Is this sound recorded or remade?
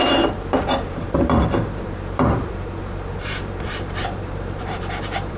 remade